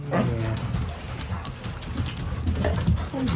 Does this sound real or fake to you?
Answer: real